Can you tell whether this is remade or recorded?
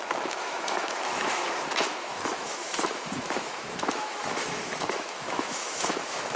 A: remade